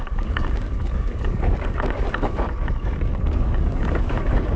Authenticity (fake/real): fake